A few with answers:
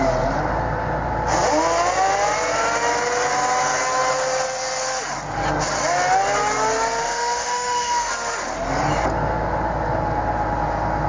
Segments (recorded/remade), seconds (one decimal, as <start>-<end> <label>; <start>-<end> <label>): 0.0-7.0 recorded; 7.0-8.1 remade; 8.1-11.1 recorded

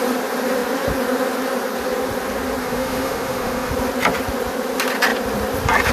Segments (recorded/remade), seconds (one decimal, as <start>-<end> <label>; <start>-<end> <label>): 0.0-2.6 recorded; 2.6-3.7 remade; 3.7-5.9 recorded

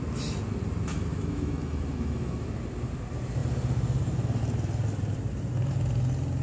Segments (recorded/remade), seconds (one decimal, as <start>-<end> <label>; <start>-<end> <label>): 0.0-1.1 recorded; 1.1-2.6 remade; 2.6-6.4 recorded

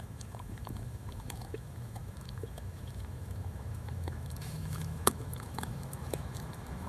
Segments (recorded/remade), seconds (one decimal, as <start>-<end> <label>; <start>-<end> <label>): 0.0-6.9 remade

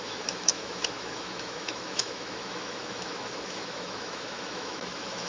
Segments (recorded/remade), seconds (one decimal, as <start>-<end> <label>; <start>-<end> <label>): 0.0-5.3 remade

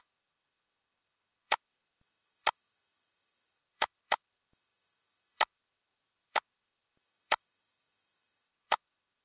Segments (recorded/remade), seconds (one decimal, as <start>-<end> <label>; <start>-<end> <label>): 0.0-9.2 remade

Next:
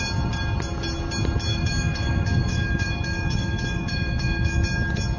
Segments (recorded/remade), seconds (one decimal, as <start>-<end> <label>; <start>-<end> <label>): 0.0-1.5 recorded; 1.5-4.6 remade; 4.6-5.2 recorded

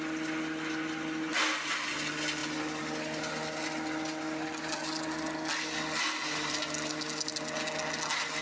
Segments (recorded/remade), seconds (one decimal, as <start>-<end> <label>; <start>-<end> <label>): 0.0-8.4 recorded